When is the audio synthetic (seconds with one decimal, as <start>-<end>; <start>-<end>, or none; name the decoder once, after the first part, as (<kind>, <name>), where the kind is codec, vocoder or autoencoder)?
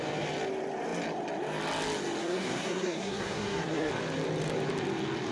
2.2-3.9 (codec, SNAC)